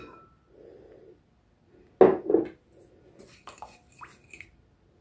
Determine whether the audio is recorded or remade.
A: recorded